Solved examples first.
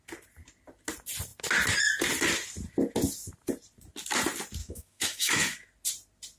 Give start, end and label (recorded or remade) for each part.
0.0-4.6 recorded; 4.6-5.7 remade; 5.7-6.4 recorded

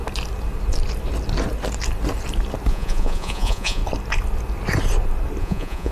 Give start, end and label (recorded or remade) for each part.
0.0-2.7 recorded; 2.7-3.8 remade; 3.8-5.4 recorded; 5.4-5.9 remade